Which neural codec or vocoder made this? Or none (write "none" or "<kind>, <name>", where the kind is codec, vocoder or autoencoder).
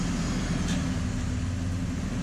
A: none